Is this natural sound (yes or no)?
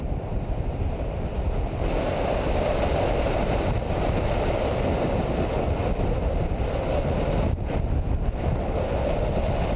yes